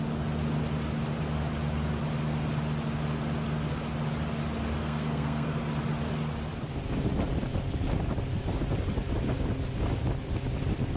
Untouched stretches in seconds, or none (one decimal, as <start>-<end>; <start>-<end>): 0.0-4.8; 5.6-11.0